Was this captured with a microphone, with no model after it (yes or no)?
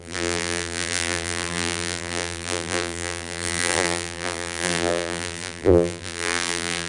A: no